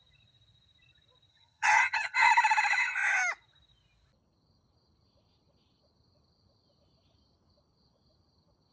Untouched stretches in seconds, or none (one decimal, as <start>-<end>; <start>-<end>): 0.0-1.3; 2.3-8.7